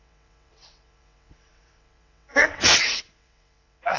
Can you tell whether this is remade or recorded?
remade